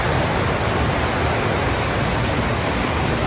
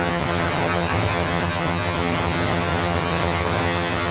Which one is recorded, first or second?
first